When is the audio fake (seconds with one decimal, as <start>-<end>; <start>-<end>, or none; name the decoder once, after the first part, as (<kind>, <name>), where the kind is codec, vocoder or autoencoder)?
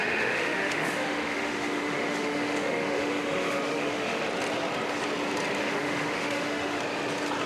0.0-4.2 (autoencoder, DAC-VAE); 5.6-6.8